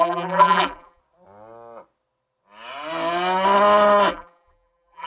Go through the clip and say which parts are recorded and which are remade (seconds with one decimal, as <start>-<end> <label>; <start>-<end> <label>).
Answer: 0.0-1.0 remade; 1.0-4.1 recorded; 4.1-5.1 remade